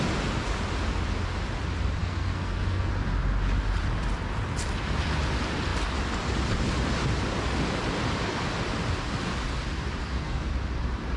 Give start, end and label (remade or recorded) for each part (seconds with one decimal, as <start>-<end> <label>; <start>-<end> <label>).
0.0-2.0 recorded; 2.0-2.9 remade; 2.9-10.0 recorded; 10.0-10.5 remade; 10.5-11.2 recorded